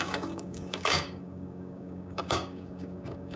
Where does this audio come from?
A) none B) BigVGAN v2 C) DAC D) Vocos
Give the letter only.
C